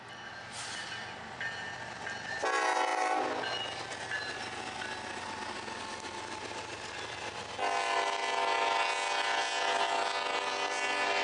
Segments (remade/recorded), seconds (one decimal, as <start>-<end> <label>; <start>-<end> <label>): 0.0-11.2 recorded